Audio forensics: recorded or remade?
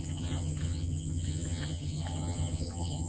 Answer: remade